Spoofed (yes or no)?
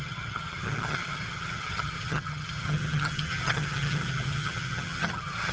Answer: yes